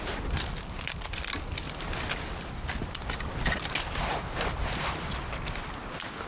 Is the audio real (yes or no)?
yes